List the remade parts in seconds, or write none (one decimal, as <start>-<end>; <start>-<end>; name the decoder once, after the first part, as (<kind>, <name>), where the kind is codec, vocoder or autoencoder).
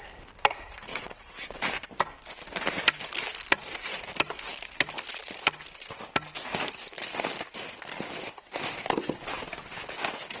0.9-1.6 (vocoder, WaveNeXt)